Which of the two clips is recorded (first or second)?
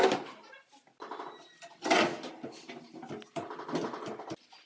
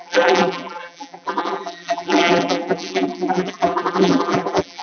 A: first